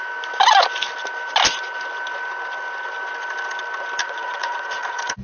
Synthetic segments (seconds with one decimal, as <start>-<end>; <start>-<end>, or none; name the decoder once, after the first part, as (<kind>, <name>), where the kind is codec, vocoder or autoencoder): 4.0-5.2 (vocoder, Vocos)